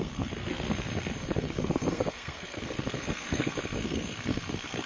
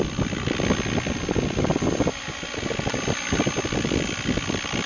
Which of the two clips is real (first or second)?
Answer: second